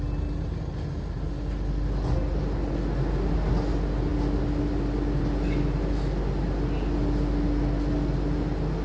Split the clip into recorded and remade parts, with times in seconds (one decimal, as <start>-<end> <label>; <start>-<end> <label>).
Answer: 0.0-8.8 recorded